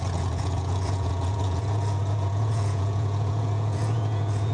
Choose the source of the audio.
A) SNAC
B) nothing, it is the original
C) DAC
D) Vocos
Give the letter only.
D